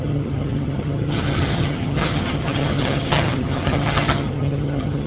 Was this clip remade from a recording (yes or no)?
yes